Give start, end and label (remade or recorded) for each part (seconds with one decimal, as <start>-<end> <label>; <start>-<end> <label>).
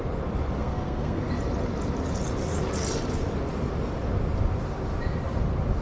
0.0-0.6 recorded; 0.6-1.3 remade; 1.3-5.8 recorded